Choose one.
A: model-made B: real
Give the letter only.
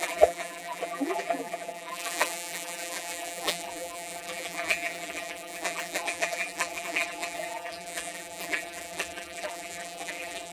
A